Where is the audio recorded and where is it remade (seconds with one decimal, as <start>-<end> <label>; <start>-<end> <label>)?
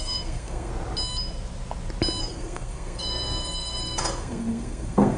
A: 0.0-0.7 remade; 0.7-2.2 recorded; 2.2-5.2 remade